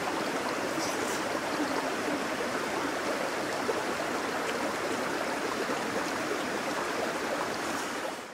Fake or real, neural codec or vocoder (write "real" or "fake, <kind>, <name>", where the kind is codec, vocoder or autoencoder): fake, vocoder, BigVGAN v2